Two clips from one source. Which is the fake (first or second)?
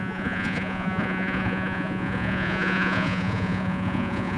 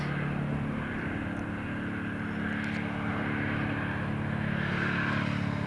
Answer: first